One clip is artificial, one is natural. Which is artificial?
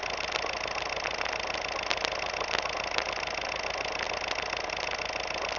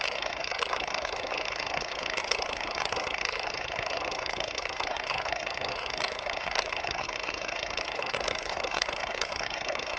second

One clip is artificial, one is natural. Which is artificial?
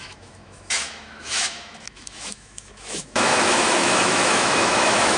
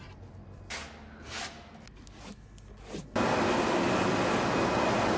first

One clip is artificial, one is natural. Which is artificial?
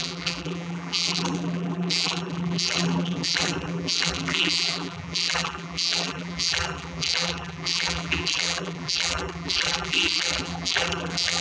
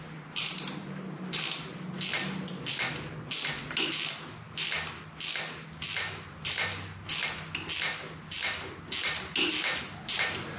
first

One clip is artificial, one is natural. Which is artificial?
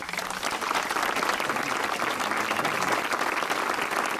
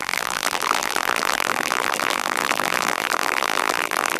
second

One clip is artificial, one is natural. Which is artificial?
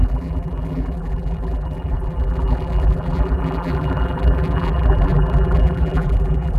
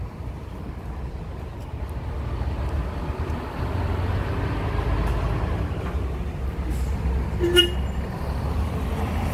first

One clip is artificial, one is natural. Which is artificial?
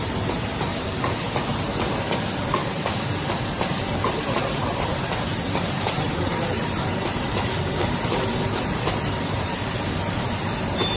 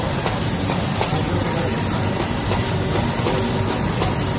first